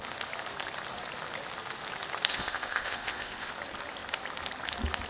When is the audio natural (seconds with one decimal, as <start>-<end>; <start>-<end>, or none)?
0.0-2.3; 3.5-5.1